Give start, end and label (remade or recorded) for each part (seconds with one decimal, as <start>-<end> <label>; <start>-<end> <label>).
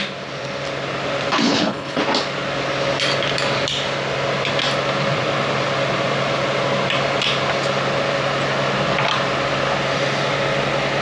0.0-1.3 recorded; 1.3-2.0 remade; 2.0-11.0 recorded